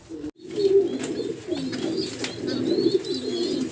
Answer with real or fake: real